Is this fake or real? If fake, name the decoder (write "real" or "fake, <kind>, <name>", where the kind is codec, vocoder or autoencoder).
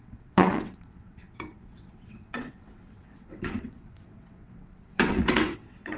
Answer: fake, vocoder, WaveNeXt